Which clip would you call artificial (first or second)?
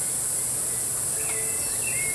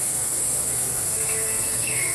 second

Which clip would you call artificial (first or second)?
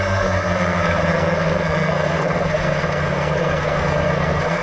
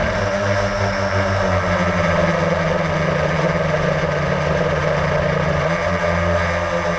first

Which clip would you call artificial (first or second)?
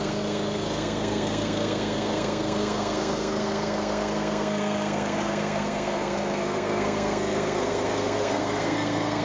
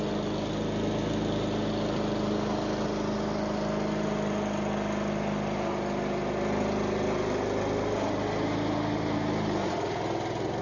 first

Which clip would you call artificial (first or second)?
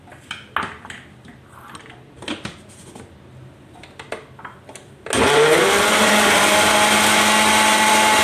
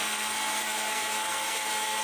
second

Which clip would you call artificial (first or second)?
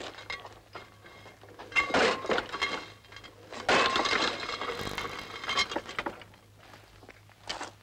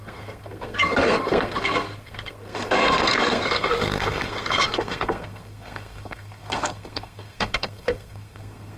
second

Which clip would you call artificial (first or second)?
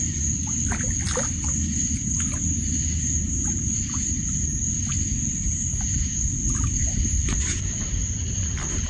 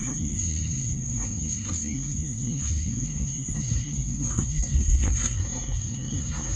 second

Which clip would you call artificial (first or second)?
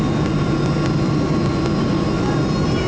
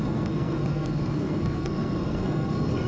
second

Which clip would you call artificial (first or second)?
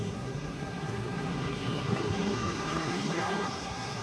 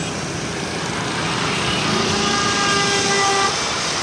first